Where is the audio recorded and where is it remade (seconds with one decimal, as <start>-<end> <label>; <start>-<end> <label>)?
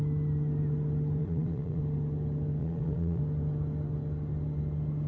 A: 0.0-1.2 recorded; 1.2-1.8 remade; 1.8-2.6 recorded; 2.6-3.2 remade; 3.2-5.1 recorded